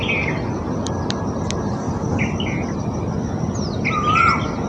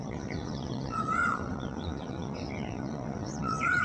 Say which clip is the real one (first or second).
first